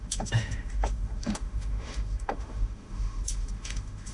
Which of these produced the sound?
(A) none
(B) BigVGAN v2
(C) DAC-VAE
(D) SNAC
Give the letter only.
C